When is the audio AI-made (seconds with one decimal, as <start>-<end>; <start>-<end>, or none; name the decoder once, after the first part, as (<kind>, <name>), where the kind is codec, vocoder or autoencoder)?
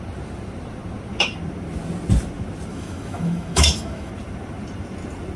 2.7-4.1 (autoencoder, DAC-VAE)